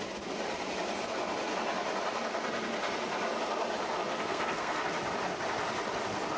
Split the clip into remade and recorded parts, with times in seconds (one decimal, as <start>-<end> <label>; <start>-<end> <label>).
0.0-4.1 recorded; 4.1-4.8 remade; 4.8-6.4 recorded